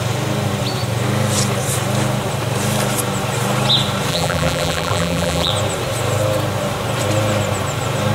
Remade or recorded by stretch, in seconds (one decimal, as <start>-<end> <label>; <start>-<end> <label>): 0.0-4.1 recorded; 4.1-5.5 remade; 5.5-8.1 recorded